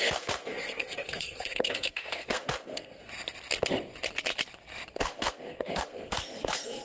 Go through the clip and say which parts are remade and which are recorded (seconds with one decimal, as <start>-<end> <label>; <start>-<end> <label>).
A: 0.0-3.0 remade; 3.0-5.0 recorded; 5.0-6.8 remade